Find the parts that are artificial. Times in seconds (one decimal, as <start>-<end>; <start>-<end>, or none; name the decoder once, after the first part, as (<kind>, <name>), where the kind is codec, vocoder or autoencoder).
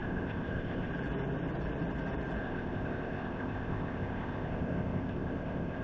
0.0-0.9 (codec, ZipCodec); 2.4-5.8